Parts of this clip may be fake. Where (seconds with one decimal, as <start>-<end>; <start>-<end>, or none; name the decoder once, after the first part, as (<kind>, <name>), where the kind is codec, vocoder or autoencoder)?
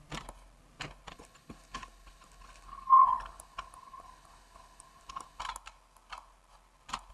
1.1-5.4 (codec, HILCodec)